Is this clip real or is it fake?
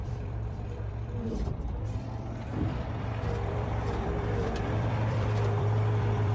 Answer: fake